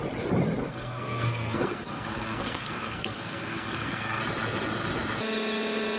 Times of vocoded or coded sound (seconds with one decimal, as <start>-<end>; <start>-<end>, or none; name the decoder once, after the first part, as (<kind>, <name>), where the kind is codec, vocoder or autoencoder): 0.6-4.2 (codec, SNAC)